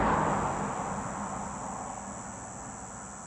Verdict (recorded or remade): recorded